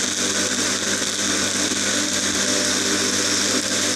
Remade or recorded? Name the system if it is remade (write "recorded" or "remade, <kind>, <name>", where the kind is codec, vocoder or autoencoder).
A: recorded